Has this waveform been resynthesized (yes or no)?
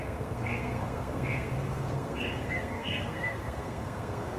yes